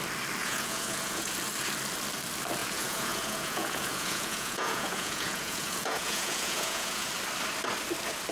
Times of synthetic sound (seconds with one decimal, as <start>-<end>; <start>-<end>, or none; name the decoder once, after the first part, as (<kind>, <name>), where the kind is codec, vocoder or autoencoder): 0.4-1.3 (vocoder, Vocos); 2.6-7.1